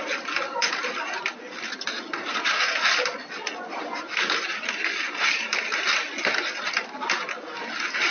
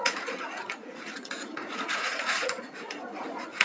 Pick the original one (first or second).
first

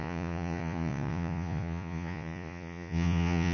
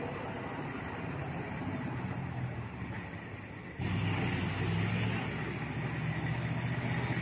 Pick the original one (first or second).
second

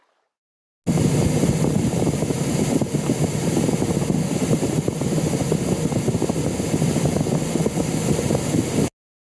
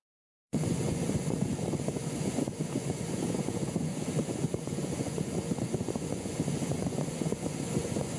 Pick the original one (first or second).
first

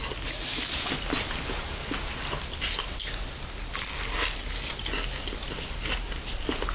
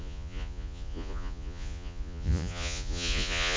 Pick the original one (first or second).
first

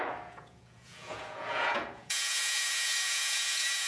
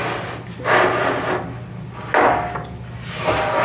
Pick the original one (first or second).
second